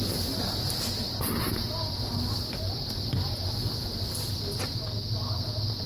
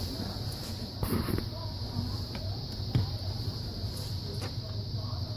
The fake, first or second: second